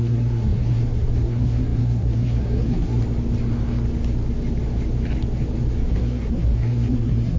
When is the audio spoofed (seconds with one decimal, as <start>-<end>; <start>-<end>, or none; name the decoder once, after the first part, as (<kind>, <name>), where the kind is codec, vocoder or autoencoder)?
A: 0.0-3.0 (codec, SNAC); 5.8-7.4